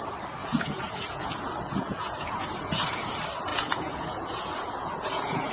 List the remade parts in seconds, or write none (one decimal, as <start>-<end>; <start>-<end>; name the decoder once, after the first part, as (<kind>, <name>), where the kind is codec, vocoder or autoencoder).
0.4-3.0 (vocoder, Vocos); 3.5-5.5